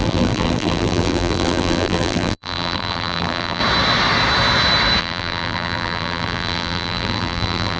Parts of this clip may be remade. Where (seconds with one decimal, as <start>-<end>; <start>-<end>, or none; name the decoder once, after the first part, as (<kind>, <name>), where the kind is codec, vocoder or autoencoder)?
0.0-3.6 (vocoder, BigVGAN v2); 5.0-7.8